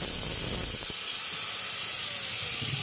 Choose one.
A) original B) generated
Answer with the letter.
A